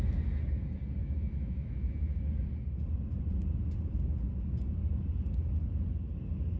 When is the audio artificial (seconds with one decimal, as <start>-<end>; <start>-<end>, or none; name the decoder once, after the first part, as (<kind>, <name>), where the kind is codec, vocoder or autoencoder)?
1.0-2.2 (autoencoder, DAC-VAE)